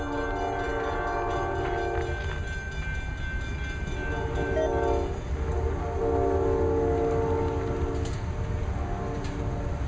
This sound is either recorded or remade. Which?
recorded